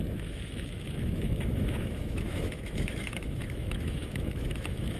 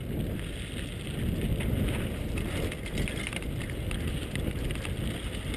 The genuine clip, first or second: second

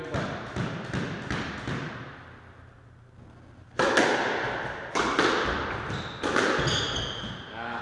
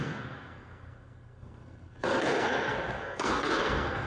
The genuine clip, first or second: first